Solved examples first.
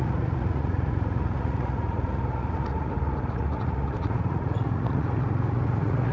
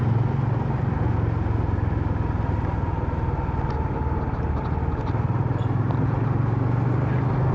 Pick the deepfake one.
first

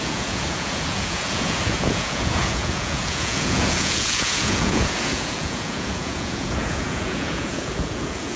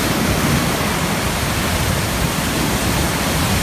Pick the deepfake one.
first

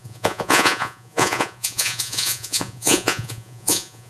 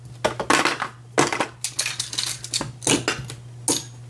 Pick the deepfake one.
first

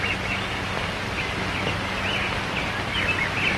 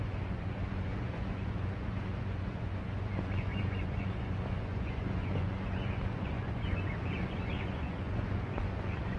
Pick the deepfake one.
second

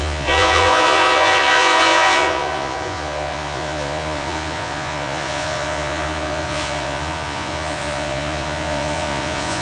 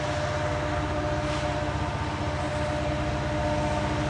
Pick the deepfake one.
first